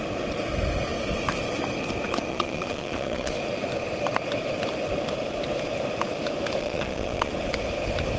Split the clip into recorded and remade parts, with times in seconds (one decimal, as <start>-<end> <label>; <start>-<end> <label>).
0.0-2.3 recorded; 2.3-3.3 remade; 3.3-6.6 recorded; 6.6-7.3 remade; 7.3-8.2 recorded